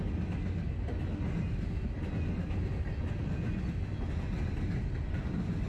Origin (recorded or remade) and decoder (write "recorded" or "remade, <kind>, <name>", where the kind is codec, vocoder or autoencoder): recorded